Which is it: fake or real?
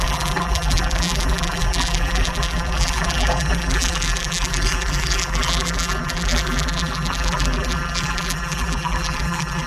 fake